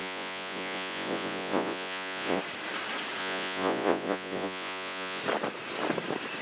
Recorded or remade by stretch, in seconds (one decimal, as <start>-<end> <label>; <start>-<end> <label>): 0.0-2.4 remade; 2.4-3.2 recorded; 3.2-5.2 remade; 5.2-6.4 recorded